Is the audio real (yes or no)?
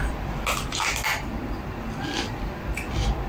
yes